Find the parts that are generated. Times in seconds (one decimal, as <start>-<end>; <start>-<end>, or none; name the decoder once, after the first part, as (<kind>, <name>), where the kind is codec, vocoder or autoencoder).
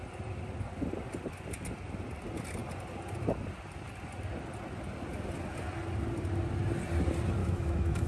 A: 7.4-8.1 (autoencoder, DAC-VAE)